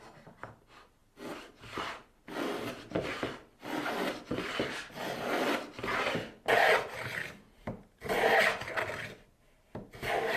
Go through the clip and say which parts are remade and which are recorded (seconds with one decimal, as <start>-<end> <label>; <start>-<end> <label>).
0.0-10.4 recorded